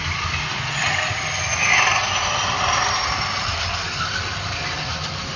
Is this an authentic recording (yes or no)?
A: yes